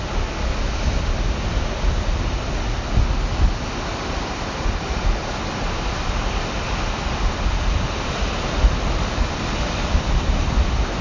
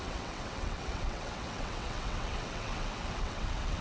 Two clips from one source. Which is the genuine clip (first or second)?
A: first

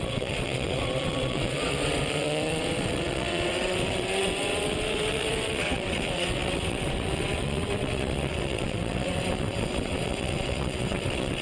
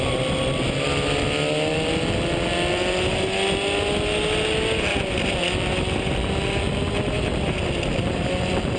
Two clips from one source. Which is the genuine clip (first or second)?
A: second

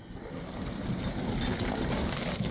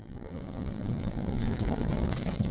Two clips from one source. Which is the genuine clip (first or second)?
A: first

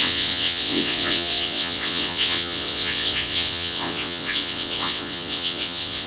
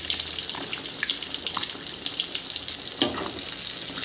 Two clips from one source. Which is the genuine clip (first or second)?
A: second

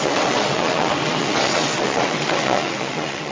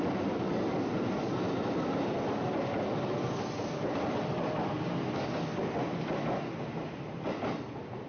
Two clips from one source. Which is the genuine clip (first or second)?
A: second